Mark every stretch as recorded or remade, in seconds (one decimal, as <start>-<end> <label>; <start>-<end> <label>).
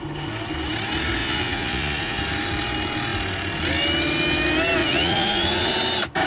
0.0-1.2 recorded; 1.2-2.2 remade; 2.2-4.8 recorded; 4.8-5.7 remade; 5.7-6.3 recorded